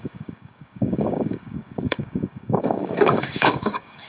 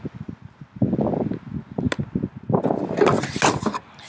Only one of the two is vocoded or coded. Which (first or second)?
first